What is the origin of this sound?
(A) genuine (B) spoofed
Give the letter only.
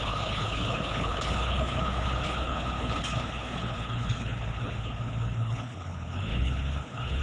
B